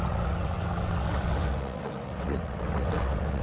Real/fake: fake